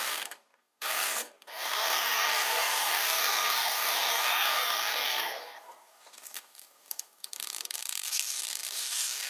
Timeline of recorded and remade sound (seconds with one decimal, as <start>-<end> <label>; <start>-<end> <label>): 0.0-9.3 remade